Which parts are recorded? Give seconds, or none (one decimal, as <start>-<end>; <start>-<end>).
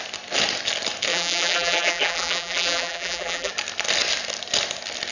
0.0-1.1; 3.5-5.1